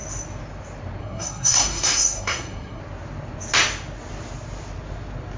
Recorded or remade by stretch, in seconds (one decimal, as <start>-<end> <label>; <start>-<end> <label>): 0.0-1.0 recorded; 1.0-2.8 remade; 2.8-5.4 recorded